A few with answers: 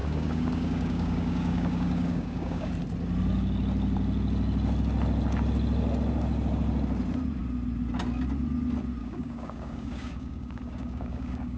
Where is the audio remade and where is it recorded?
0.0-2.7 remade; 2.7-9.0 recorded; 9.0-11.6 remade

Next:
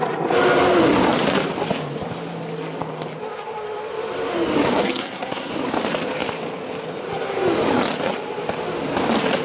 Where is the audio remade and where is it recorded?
0.0-4.8 recorded; 4.8-5.5 remade; 5.5-9.4 recorded

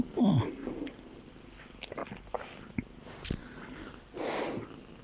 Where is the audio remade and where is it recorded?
0.0-5.0 recorded

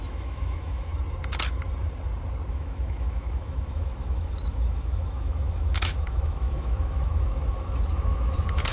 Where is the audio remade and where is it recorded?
0.0-0.9 remade; 0.9-2.5 recorded; 2.5-8.7 remade